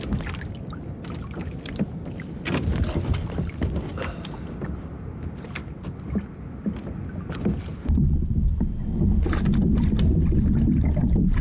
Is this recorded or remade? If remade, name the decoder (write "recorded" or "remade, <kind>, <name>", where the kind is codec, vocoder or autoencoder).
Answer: recorded